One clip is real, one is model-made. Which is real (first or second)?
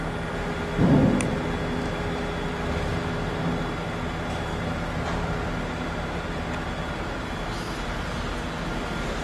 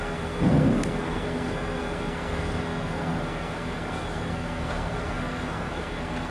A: first